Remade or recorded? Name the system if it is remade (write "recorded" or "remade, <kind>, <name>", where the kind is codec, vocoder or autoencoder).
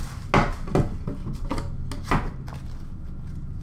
recorded